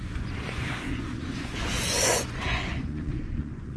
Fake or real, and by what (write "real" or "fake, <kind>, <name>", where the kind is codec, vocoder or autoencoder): fake, vocoder, Vocos